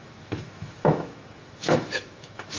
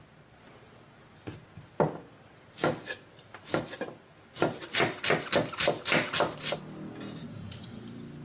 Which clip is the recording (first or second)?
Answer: second